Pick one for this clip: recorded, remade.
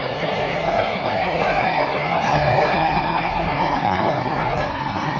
remade